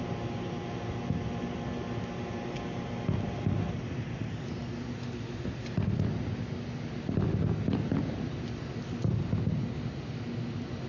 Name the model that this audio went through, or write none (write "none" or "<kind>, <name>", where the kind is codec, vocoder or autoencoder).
none